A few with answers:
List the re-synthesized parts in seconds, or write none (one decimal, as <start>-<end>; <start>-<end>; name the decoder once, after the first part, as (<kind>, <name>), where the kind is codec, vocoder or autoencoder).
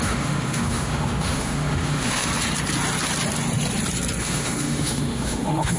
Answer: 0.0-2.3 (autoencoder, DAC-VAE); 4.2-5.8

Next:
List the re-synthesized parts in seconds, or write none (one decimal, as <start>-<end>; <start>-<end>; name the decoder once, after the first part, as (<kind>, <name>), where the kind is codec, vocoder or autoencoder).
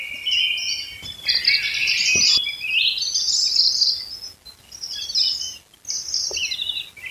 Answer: 1.8-2.4 (vocoder, BigVGAN v2)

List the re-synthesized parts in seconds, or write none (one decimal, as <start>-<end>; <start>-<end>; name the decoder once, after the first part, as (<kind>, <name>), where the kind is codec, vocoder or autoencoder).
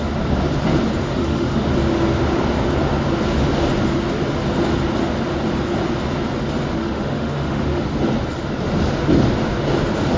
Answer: 1.0-1.7 (autoencoder, DAC-VAE); 6.8-7.8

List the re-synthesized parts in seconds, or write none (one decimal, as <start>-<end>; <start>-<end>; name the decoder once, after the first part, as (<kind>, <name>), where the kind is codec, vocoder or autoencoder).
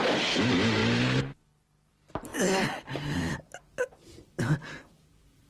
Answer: 0.0-0.8 (vocoder, BigVGAN v2); 1.9-2.3; 3.3-5.5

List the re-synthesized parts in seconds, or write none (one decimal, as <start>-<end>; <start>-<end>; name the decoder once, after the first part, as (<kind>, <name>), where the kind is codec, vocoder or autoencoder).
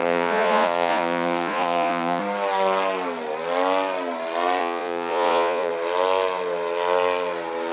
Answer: 0.0-2.2 (vocoder, Vocos); 4.6-5.7